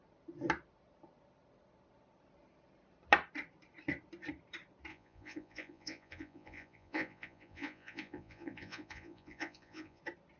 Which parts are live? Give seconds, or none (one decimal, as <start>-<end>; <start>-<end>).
0.0-4.9; 10.0-10.4